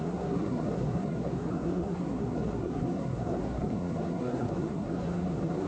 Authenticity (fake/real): fake